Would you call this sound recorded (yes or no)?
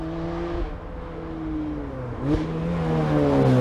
yes